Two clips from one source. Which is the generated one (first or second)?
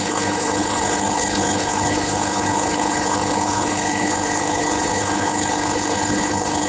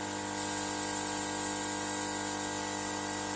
first